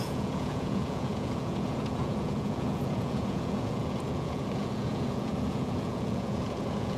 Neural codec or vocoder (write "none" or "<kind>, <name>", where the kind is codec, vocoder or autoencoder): vocoder, Vocos